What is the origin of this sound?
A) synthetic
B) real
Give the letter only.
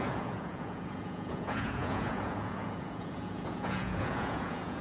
A